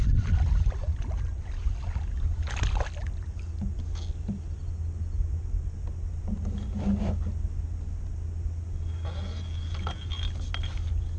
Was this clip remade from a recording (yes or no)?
no